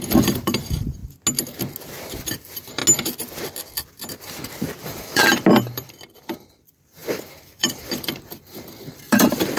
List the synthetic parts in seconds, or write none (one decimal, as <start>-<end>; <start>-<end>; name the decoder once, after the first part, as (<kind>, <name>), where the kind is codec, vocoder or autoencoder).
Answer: 0.0-1.0 (vocoder, BigVGAN v2); 2.2-2.8; 4.8-9.6

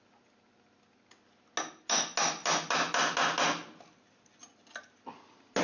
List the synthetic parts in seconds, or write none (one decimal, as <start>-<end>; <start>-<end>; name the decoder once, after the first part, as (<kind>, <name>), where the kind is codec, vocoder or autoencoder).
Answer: none

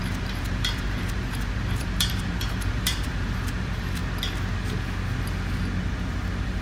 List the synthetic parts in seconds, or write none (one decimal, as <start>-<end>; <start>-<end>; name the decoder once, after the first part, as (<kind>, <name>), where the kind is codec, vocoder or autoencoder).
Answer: 0.0-4.0 (vocoder, BigVGAN v2)